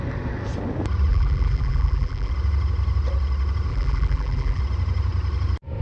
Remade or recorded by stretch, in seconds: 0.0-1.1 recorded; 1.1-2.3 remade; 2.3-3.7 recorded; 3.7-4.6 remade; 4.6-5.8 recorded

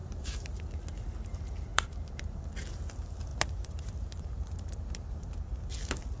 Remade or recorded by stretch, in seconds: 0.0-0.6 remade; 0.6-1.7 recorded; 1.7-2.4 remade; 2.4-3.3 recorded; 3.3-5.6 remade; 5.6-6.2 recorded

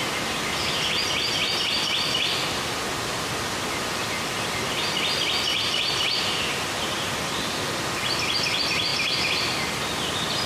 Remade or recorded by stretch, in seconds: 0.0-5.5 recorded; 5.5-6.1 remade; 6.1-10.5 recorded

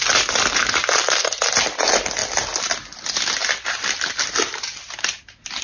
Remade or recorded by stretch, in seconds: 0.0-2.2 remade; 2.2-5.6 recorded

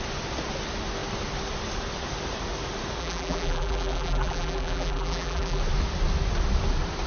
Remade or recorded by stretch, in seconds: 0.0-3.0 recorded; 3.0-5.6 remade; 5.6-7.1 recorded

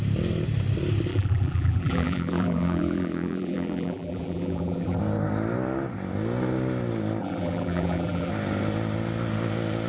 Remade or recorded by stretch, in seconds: 0.0-1.1 recorded; 1.1-5.0 remade; 5.0-7.2 recorded; 7.2-8.3 remade; 8.3-9.9 recorded

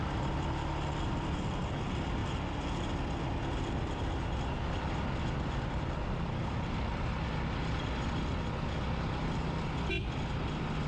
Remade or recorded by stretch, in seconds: 0.0-10.9 recorded

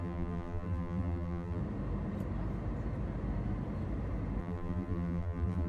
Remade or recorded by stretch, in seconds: 0.0-1.6 remade; 1.6-4.4 recorded; 4.4-5.7 remade